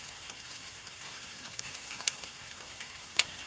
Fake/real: fake